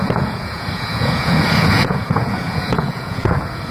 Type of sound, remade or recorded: remade